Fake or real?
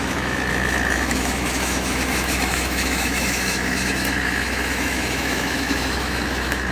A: fake